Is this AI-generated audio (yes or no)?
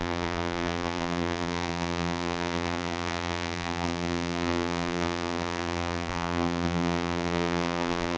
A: yes